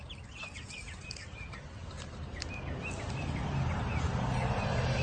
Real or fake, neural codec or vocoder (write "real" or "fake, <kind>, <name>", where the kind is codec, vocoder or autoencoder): real